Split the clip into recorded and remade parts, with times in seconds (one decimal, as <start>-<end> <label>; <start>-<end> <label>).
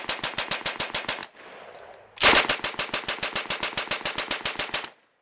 0.0-5.2 recorded